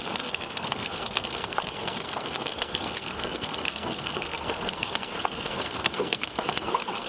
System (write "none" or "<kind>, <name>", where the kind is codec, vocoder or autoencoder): codec, SNAC